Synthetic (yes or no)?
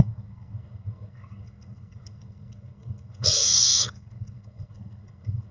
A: yes